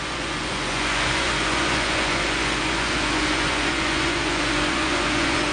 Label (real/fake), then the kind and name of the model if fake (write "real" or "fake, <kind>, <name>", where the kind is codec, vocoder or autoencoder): fake, vocoder, Vocos